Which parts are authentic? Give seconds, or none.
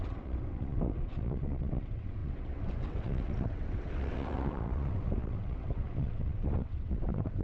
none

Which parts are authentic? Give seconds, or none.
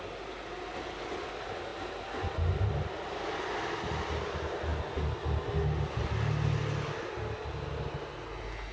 0.0-8.7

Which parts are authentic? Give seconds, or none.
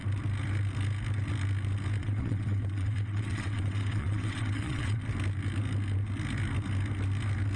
0.0-2.0; 5.0-7.6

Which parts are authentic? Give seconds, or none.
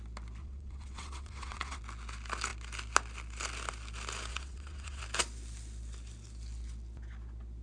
0.0-0.4; 1.8-4.3; 5.0-7.6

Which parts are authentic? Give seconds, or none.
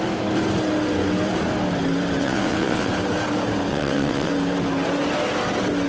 0.0-2.2; 2.9-3.7; 4.3-5.9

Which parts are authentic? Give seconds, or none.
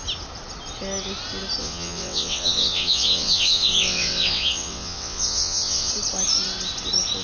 0.0-1.6; 5.9-7.2